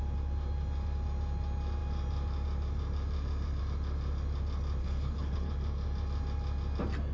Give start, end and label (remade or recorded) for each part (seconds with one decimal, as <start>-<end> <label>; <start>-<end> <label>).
0.0-4.8 recorded; 4.8-5.5 remade; 5.5-7.1 recorded